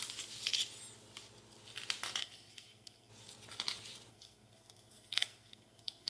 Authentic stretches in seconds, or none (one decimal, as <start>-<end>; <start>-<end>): 0.0-2.2; 3.1-4.1